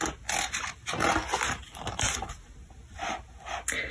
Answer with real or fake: real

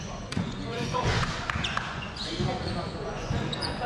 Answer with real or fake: fake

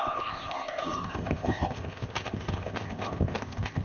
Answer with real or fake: fake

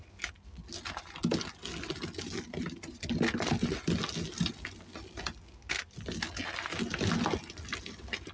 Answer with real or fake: real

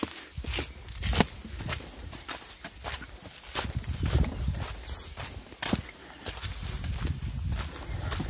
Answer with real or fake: real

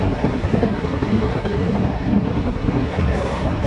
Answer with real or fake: fake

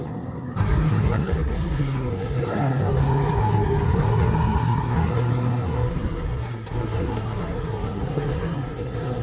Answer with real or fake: fake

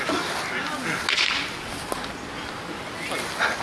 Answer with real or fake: real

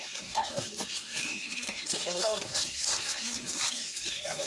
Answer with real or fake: fake